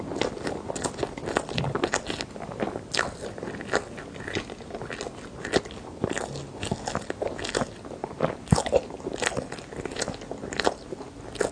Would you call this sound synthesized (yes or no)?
no